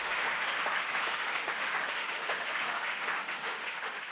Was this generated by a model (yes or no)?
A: yes